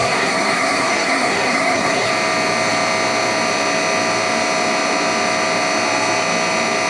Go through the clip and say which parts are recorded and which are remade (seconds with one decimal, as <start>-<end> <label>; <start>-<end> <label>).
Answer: 0.0-2.1 remade; 2.1-6.9 recorded